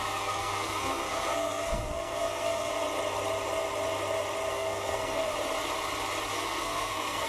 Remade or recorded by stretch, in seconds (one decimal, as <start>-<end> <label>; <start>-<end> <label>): 0.0-2.7 remade; 2.7-4.5 recorded; 4.5-5.3 remade; 5.3-6.3 recorded; 6.3-7.3 remade